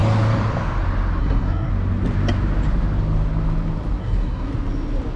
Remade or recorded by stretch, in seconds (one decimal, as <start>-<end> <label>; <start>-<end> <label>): 0.0-1.2 recorded; 1.2-1.7 remade; 1.7-4.0 recorded; 4.0-4.5 remade; 4.5-5.2 recorded